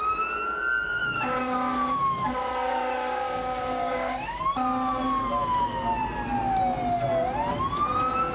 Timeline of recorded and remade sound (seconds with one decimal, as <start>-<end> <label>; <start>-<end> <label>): 0.0-1.0 recorded; 1.0-4.4 remade; 4.4-5.4 recorded; 5.4-6.0 remade; 6.0-8.3 recorded

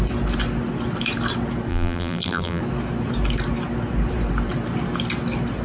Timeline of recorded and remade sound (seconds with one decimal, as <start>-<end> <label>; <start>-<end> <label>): 0.0-1.7 recorded; 1.7-2.6 remade; 2.6-5.6 recorded

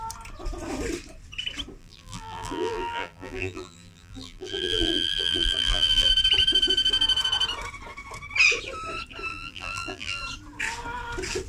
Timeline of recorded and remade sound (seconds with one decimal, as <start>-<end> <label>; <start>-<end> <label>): 0.0-1.8 recorded; 1.8-6.1 remade; 6.1-9.3 recorded; 9.3-10.2 remade; 10.2-11.5 recorded

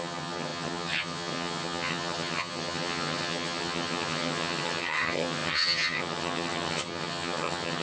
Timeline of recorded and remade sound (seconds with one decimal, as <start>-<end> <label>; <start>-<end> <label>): 0.0-7.8 remade

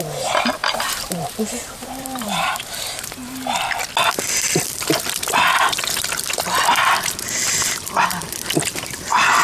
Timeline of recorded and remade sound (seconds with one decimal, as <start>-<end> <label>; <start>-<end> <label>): 0.0-0.6 recorded; 0.6-2.6 remade; 2.6-9.4 recorded